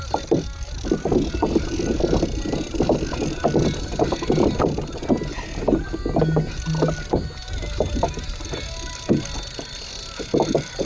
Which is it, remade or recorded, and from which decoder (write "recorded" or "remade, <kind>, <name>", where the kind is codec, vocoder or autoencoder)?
recorded